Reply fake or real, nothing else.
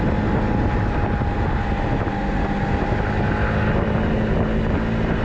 real